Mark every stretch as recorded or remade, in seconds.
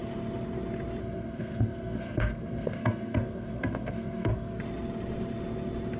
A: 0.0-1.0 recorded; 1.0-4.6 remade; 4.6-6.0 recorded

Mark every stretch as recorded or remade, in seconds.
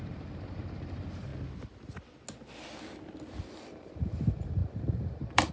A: 0.0-1.3 remade; 1.3-3.4 recorded; 3.4-5.5 remade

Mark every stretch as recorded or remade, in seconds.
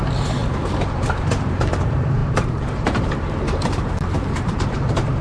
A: 0.0-5.2 remade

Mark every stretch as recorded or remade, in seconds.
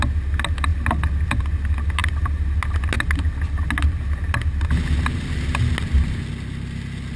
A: 0.0-7.2 recorded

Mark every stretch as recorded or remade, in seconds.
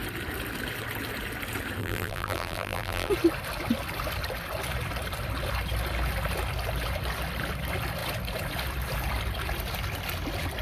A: 0.0-1.8 recorded; 1.8-3.1 remade; 3.1-10.6 recorded